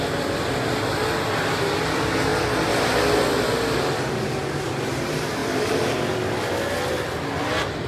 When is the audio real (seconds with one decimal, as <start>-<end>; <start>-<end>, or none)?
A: 0.0-7.9